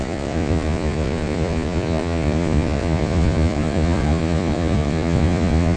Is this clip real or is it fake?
fake